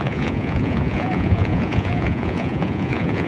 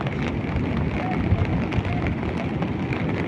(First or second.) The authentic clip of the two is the second